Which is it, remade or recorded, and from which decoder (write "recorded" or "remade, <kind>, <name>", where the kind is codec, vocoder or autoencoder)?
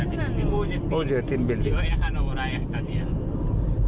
recorded